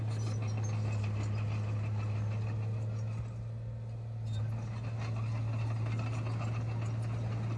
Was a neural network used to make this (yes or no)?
no